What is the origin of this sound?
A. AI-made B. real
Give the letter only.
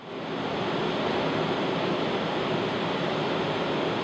B